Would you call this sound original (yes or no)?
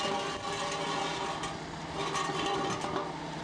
yes